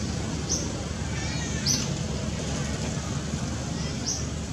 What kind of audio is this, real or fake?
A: real